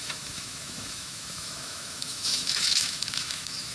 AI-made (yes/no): yes